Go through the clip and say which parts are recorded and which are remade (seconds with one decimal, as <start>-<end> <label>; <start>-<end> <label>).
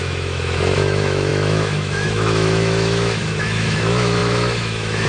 0.0-5.1 remade